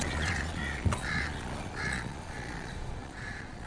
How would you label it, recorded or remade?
remade